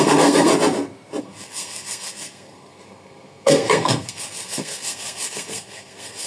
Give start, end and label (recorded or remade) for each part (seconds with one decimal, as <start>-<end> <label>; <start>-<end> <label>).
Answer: 0.0-0.5 remade; 0.5-1.2 recorded; 1.2-6.3 remade